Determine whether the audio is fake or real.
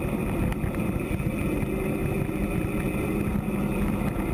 real